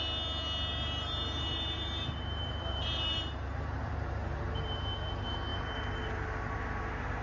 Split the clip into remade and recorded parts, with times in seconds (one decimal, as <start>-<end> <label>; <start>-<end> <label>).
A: 0.0-0.7 recorded; 0.7-4.8 remade; 4.8-5.5 recorded; 5.5-6.0 remade; 6.0-7.2 recorded